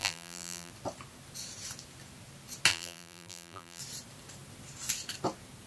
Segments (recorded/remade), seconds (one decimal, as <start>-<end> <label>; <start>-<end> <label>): 0.0-0.7 remade; 0.7-2.7 recorded; 2.7-3.8 remade; 3.8-5.7 recorded